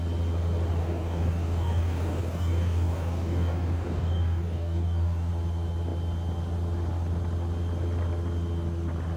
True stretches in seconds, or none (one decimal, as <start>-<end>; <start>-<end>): 0.0-0.8; 5.3-9.2